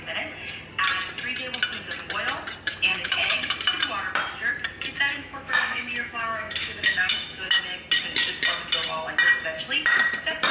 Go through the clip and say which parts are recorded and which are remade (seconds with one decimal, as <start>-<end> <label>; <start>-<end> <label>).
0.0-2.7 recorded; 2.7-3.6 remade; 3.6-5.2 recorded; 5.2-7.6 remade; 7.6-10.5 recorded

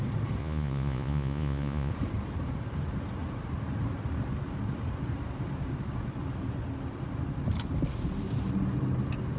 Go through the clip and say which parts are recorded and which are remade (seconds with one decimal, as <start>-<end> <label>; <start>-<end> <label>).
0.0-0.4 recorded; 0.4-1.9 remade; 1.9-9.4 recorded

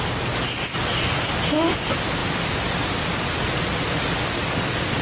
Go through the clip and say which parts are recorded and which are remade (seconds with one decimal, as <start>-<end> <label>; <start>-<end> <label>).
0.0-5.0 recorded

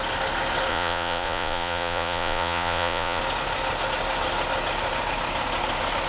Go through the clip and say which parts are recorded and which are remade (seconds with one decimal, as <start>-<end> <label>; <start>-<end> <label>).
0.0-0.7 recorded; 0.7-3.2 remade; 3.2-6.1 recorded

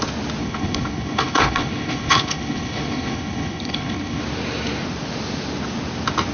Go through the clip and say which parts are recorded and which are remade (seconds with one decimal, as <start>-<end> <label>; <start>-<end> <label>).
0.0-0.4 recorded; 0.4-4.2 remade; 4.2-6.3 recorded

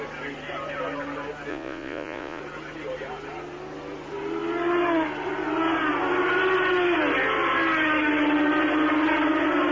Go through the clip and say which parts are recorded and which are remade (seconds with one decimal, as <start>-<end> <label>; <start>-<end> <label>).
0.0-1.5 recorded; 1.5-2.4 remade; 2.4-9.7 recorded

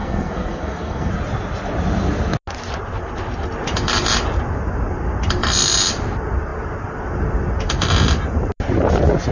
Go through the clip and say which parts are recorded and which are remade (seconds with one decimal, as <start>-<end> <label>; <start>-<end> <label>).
0.0-1.1 remade; 1.1-9.3 recorded

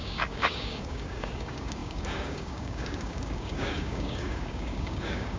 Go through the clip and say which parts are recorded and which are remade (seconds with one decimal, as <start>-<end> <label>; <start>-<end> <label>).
0.0-5.4 remade